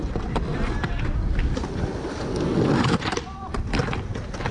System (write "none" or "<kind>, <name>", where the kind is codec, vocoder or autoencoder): none